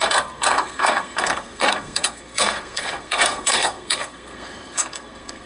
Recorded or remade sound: remade